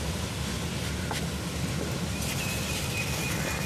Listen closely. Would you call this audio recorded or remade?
recorded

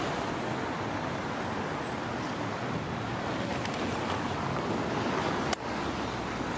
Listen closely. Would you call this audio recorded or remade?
recorded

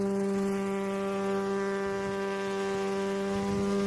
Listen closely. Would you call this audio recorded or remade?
recorded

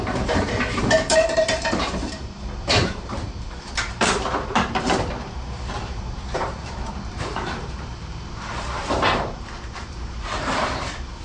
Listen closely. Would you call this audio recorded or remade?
remade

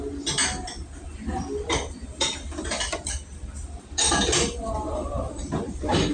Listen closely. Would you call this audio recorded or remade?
recorded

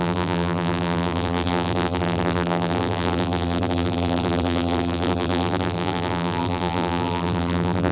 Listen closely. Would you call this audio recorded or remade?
remade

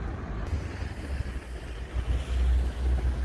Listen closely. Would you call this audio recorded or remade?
recorded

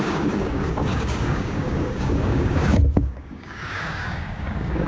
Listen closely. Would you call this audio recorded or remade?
remade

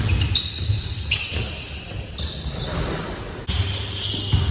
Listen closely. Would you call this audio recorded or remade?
recorded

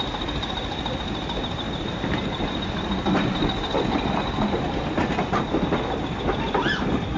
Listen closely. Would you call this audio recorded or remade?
recorded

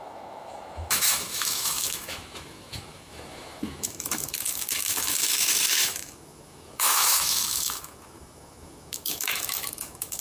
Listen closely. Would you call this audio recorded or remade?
remade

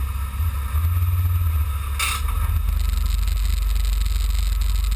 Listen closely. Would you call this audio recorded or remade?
recorded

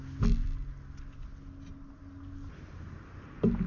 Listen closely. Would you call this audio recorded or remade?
recorded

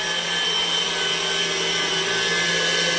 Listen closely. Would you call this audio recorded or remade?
recorded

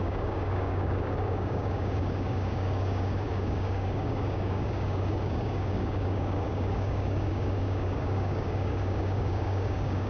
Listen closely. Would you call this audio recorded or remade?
remade